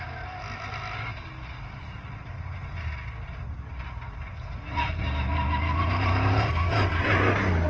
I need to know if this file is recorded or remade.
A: recorded